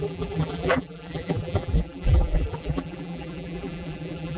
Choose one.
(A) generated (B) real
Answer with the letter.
A